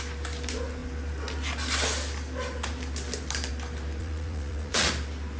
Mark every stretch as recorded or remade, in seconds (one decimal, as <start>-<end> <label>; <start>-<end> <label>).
0.0-4.0 recorded; 4.0-4.9 remade; 4.9-5.4 recorded